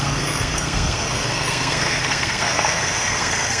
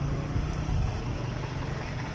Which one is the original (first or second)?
second